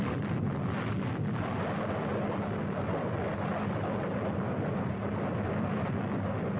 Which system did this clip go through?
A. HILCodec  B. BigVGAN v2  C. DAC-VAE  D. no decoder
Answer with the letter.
D